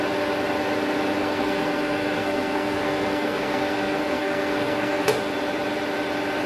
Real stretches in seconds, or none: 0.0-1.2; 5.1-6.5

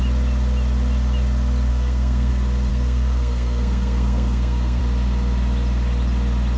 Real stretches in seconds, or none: 0.0-1.7; 2.3-2.7; 4.8-6.6

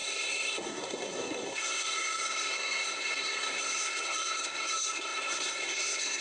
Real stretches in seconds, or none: none